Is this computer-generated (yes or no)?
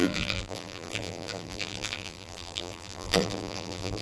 yes